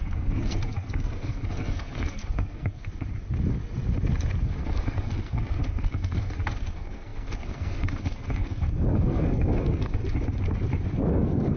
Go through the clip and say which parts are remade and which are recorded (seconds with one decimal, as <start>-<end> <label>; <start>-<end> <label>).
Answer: 0.0-2.8 remade; 2.8-4.4 recorded; 4.4-10.0 remade; 10.0-11.1 recorded; 11.1-11.6 remade